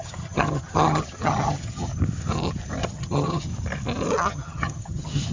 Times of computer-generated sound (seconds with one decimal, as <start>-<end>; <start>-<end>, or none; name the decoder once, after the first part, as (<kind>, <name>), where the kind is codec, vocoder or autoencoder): 0.0-1.9 (vocoder, HiFi-GAN); 2.8-3.5; 4.3-5.3